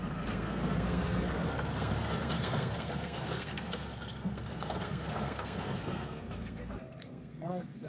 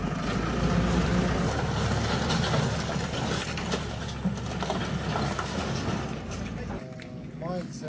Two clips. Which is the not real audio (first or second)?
first